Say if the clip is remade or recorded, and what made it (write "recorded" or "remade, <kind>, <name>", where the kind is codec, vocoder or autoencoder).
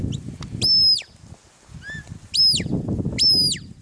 recorded